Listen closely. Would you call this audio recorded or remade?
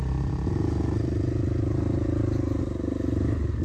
recorded